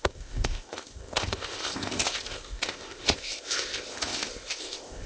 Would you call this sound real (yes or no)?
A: no